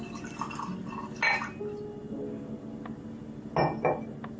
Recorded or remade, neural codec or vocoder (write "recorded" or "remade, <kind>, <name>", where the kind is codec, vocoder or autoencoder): recorded